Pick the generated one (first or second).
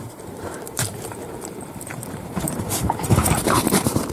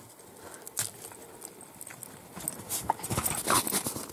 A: first